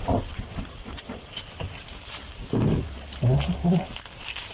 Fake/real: real